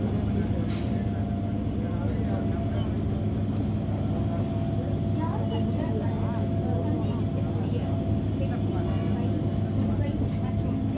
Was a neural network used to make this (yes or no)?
no